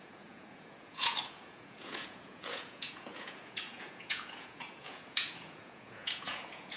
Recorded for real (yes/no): no